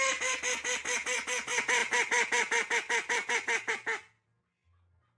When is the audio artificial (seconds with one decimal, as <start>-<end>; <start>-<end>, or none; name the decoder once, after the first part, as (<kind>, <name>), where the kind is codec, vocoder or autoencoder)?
none